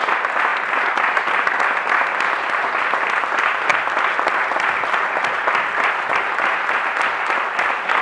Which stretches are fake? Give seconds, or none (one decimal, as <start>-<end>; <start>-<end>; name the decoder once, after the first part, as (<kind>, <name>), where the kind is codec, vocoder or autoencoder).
none